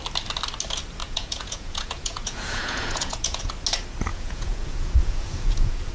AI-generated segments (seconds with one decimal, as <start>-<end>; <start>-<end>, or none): 1.0-3.5; 4.1-5.9